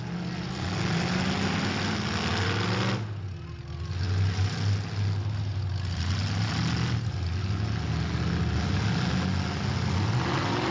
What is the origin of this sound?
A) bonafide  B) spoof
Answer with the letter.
A